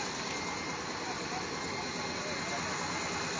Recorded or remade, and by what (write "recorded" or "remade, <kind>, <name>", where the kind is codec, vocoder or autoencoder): recorded